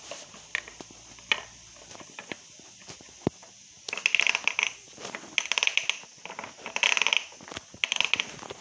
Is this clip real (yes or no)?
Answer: yes